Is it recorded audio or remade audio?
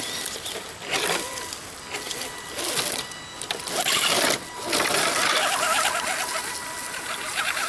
recorded